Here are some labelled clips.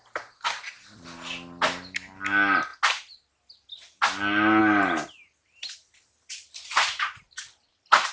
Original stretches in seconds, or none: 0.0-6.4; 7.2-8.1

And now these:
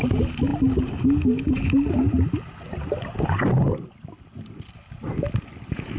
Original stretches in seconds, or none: 0.0-6.0